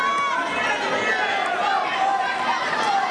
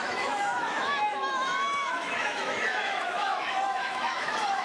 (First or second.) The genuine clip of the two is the first